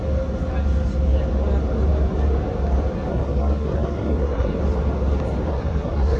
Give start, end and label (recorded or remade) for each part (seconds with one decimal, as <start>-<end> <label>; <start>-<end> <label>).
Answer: 0.0-3.1 recorded; 3.1-4.6 remade; 4.6-5.5 recorded; 5.5-6.2 remade